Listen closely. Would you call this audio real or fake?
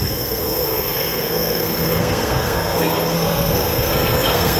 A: fake